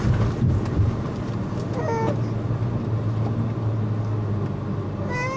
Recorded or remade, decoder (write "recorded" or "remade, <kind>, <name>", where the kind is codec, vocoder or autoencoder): recorded